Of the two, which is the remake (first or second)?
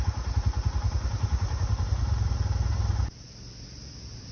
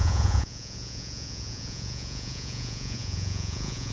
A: second